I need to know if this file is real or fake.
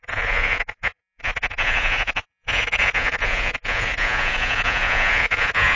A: fake